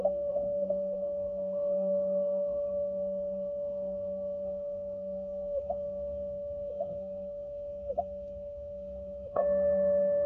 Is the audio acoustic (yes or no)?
no